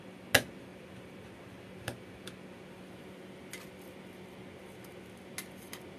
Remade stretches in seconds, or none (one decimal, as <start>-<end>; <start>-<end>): none